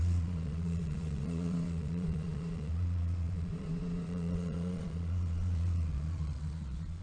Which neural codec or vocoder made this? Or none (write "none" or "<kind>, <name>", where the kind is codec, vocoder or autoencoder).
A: vocoder, Vocos